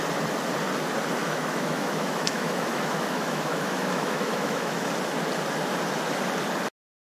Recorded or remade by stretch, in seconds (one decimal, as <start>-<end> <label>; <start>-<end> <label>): 0.0-1.2 recorded; 1.2-4.9 remade; 4.9-7.1 recorded